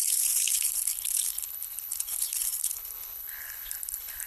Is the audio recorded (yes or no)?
no